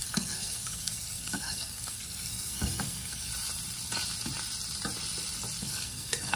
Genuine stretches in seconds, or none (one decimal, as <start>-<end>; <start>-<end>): 3.3-5.6